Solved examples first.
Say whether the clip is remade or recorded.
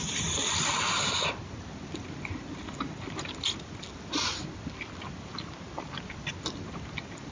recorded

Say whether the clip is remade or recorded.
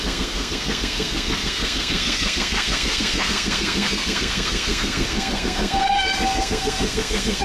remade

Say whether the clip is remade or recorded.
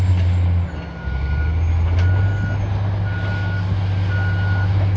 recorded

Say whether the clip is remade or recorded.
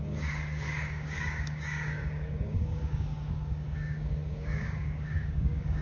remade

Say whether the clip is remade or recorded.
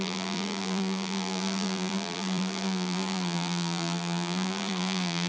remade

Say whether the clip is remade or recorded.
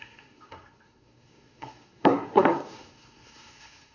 remade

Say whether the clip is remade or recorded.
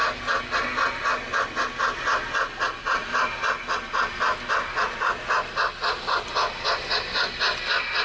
recorded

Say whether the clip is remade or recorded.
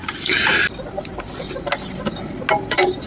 recorded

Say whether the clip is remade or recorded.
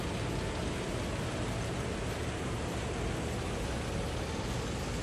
recorded